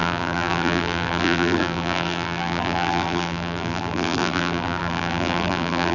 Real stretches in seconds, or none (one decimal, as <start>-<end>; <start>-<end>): none